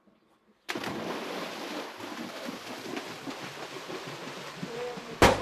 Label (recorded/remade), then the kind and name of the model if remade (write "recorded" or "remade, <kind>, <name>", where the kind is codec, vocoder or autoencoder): recorded